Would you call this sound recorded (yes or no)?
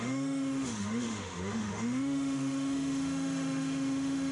no